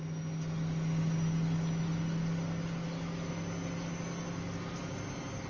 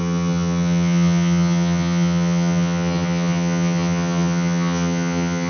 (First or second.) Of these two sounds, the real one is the first